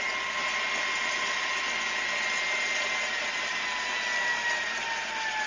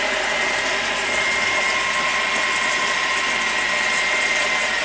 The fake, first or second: second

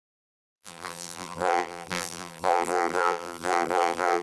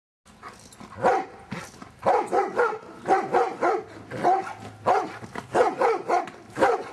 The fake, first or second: first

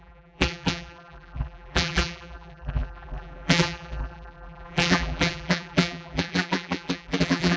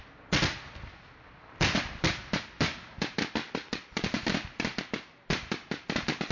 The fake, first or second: first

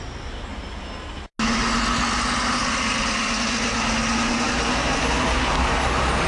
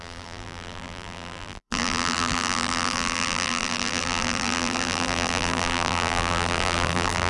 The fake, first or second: second